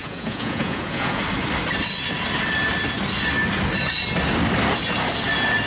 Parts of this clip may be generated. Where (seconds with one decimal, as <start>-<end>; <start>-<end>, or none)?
0.0-1.2